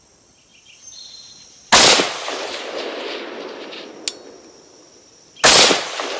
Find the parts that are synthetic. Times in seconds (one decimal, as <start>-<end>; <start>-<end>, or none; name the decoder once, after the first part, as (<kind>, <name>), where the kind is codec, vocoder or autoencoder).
none